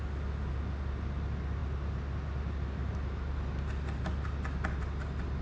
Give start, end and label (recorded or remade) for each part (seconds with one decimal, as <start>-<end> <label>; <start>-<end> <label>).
0.0-5.4 recorded